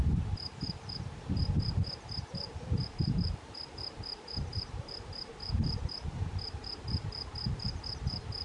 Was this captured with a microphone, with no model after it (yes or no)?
no